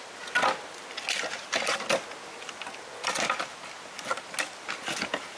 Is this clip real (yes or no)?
yes